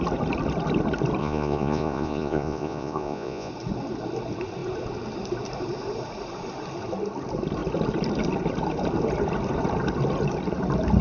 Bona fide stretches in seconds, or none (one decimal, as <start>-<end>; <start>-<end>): 0.0-1.2; 3.5-11.0